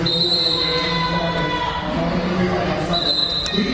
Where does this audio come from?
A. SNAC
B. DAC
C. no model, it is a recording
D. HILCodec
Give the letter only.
C